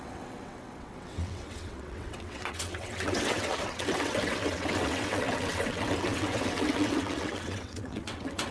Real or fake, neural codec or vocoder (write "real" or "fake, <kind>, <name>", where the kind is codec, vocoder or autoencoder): fake, vocoder, WaveNeXt